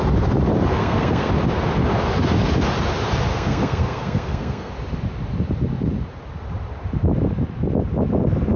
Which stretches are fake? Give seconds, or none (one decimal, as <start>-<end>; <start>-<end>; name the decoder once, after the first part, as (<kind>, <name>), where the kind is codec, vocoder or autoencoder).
0.8-1.3 (codec, SNAC); 3.3-4.7